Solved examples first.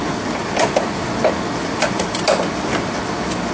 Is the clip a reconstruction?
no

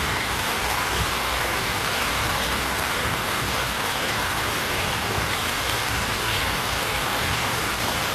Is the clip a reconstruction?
yes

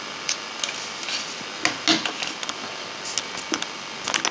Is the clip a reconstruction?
no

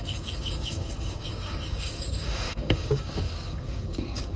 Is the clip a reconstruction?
yes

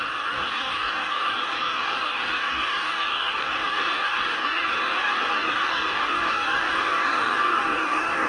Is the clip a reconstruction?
yes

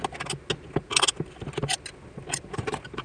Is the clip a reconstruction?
no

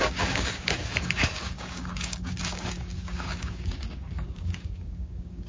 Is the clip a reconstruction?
yes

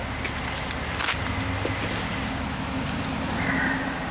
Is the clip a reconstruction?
no